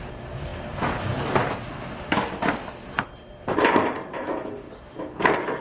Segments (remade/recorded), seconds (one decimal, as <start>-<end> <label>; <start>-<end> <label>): 0.0-5.6 recorded